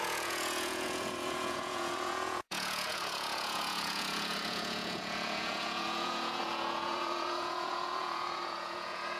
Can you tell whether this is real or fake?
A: fake